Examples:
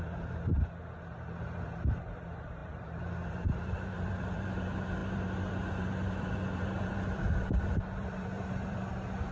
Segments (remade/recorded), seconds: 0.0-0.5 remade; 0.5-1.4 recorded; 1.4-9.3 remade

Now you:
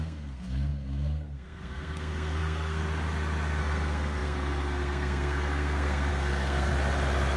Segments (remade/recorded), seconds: 0.0-2.8 remade; 2.8-3.6 recorded; 3.6-6.7 remade; 6.7-7.4 recorded